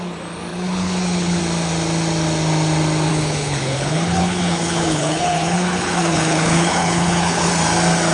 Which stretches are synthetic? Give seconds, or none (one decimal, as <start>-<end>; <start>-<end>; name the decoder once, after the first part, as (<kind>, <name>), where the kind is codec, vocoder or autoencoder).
0.5-1.4 (codec, HILCodec); 3.1-7.5